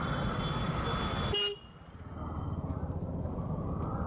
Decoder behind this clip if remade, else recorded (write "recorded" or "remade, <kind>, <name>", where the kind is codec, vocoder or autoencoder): recorded